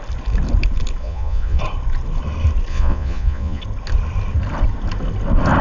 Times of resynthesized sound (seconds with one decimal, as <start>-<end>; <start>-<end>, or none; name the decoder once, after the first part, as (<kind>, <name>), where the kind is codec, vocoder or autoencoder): 1.0-1.6 (vocoder, Vocos); 2.7-3.6